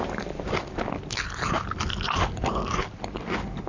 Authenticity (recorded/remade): recorded